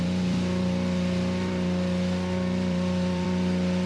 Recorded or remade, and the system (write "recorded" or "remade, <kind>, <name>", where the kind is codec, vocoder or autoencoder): remade, vocoder, BigVGAN v2